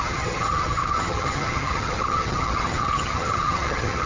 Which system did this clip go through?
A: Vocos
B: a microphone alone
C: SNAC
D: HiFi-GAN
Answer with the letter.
D